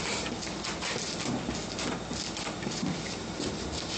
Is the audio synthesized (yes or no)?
no